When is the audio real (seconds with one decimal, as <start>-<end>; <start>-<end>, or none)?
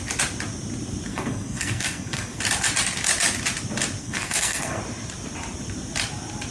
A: 0.0-1.1; 2.4-4.0; 4.8-6.5